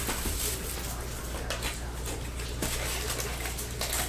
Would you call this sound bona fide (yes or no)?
yes